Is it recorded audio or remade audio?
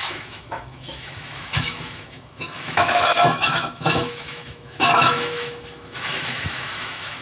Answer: remade